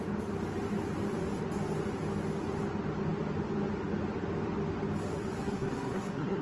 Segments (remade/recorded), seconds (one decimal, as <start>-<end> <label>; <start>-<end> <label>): 0.0-5.4 recorded; 5.4-6.4 remade